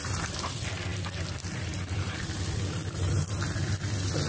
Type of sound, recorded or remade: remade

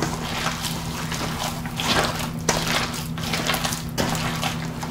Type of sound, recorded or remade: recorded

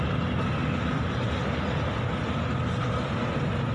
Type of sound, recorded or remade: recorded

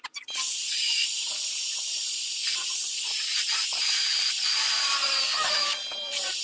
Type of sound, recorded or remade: remade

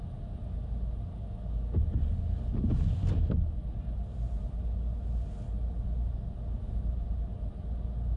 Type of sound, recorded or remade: recorded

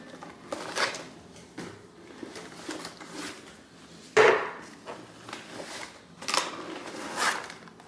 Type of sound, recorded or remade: recorded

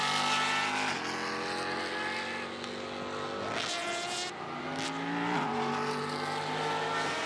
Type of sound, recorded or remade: recorded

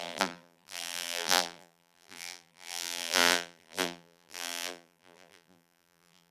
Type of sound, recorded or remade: remade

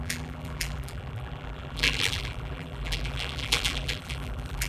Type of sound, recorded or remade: remade